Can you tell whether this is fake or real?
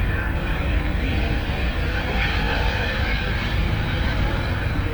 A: fake